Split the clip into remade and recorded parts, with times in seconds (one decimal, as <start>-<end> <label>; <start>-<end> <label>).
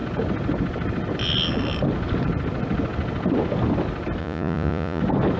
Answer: 0.0-4.2 recorded; 4.2-5.0 remade; 5.0-5.4 recorded